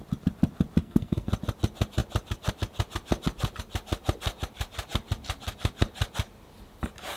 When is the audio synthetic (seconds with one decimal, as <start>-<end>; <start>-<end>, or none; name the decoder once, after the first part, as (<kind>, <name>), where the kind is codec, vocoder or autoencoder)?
0.8-1.3 (codec, SNAC)